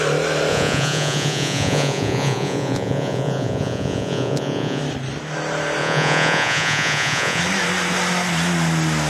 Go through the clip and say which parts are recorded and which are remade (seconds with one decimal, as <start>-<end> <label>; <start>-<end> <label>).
0.0-0.5 recorded; 0.5-4.8 remade; 4.8-5.8 recorded; 5.8-7.4 remade; 7.4-9.1 recorded